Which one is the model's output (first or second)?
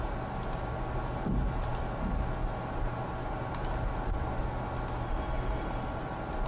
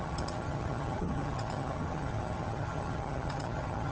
second